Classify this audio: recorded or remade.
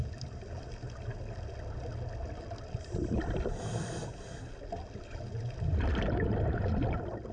recorded